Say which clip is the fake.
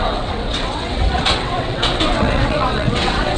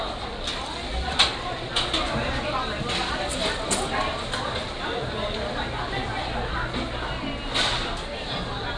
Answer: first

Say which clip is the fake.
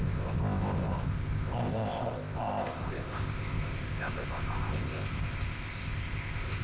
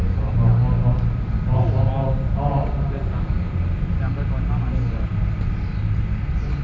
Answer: first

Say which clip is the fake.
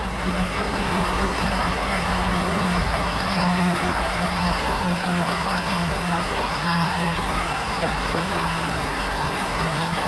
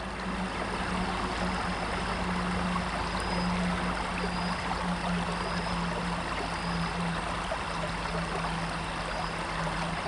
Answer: first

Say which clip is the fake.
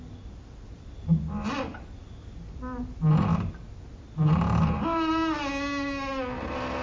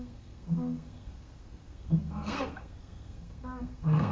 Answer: second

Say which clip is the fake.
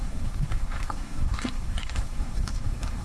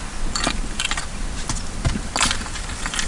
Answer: first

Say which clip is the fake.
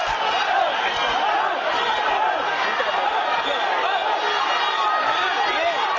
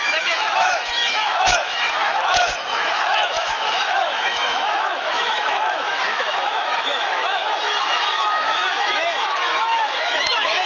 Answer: second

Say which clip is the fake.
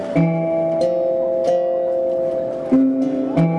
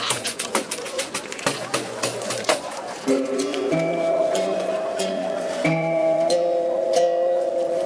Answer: second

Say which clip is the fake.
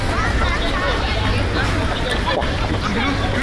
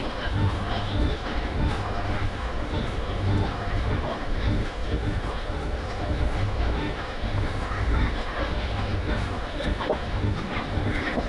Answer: second